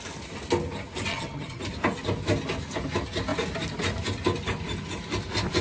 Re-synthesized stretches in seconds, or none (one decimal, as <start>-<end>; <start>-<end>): 1.1-1.6